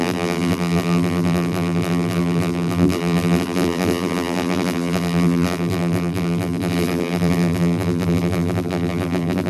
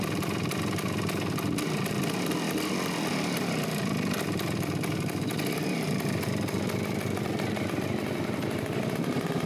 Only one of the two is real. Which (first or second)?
second